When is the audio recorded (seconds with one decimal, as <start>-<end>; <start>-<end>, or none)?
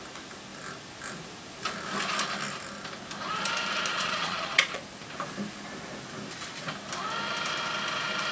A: 0.0-3.9; 4.8-8.3